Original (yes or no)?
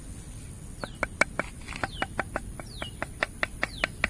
yes